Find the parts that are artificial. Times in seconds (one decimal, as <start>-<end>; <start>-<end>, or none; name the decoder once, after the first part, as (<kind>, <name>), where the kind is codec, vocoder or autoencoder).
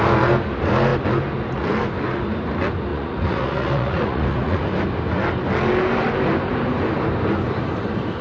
2.9-4.6 (vocoder, Vocos)